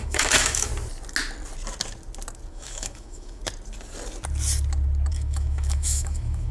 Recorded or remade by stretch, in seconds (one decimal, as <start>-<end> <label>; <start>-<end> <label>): 0.0-0.7 remade; 0.7-2.5 recorded; 2.5-3.4 remade; 3.4-5.1 recorded; 5.1-6.5 remade